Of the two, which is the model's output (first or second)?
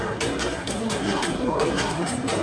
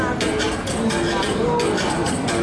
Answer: first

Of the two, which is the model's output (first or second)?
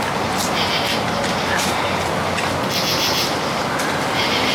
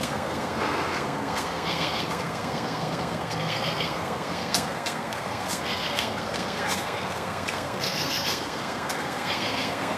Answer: second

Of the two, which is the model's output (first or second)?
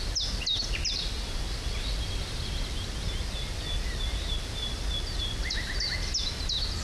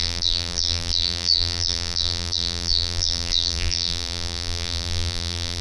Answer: second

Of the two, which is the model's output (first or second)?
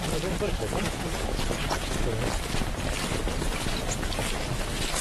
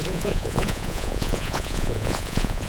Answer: second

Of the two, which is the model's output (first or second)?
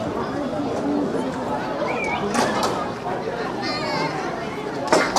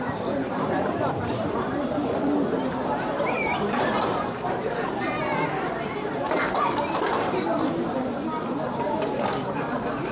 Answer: second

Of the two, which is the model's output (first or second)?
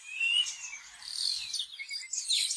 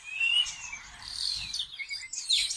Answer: second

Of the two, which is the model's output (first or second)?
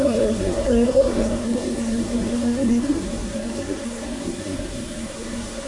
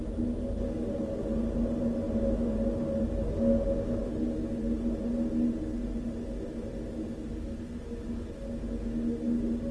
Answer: first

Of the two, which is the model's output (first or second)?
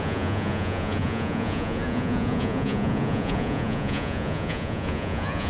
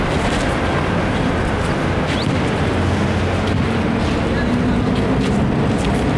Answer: first